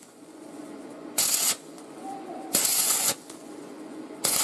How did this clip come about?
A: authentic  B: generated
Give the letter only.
B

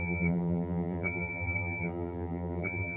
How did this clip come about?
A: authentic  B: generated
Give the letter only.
B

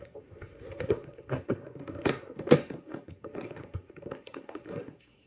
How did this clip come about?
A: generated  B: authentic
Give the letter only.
A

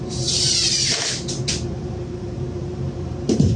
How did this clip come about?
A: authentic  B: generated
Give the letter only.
B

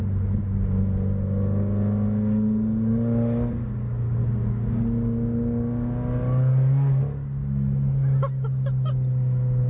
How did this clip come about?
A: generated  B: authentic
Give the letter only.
B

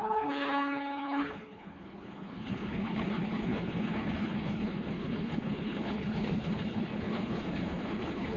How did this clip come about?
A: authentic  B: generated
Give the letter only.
B